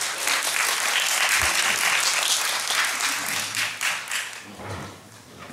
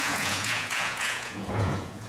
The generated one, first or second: second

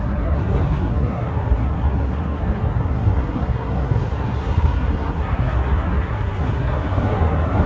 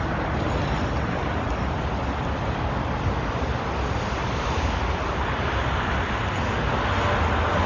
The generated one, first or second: first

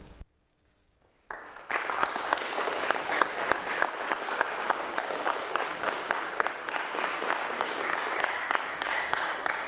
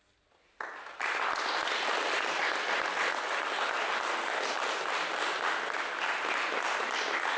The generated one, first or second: first